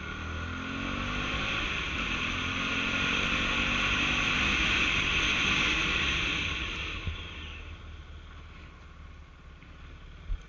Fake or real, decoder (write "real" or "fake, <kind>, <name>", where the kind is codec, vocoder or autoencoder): real